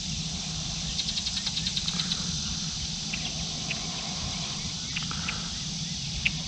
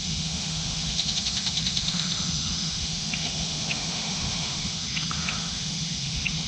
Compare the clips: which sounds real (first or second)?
first